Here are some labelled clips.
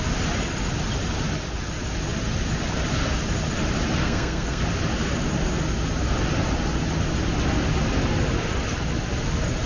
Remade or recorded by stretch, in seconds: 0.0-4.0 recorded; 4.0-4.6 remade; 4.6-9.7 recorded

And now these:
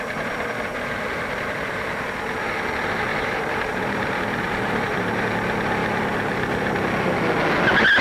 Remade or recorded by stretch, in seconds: 0.0-0.7 recorded; 0.7-1.8 remade; 1.8-3.1 recorded; 3.1-5.2 remade; 5.2-5.8 recorded; 5.8-6.7 remade; 6.7-8.0 recorded

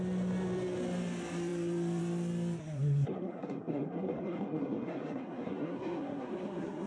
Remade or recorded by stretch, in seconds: 0.0-2.6 recorded; 2.6-6.9 remade

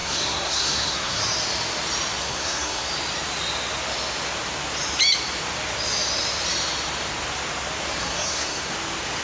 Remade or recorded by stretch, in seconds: 0.0-1.2 remade; 1.2-2.2 recorded; 2.2-2.9 remade; 2.9-8.0 recorded; 8.0-8.7 remade; 8.7-9.2 recorded

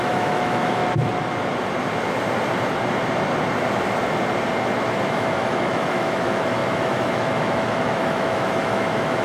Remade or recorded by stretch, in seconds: 0.0-0.8 remade; 0.8-5.1 recorded; 5.1-9.2 remade

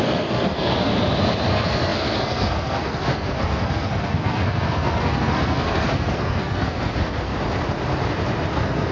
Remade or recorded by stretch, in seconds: 0.0-0.9 remade; 0.9-1.5 recorded; 1.5-7.3 remade; 7.3-8.5 recorded; 8.5-8.9 remade

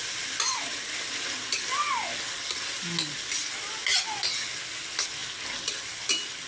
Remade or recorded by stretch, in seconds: 0.0-6.5 recorded

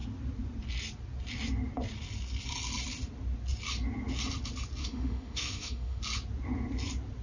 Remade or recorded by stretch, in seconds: 0.0-4.8 recorded; 4.8-6.0 remade; 6.0-7.2 recorded